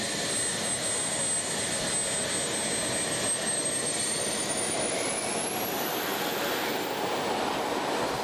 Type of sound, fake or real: real